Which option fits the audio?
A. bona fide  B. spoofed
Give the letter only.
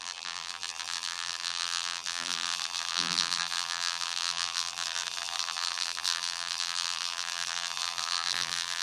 B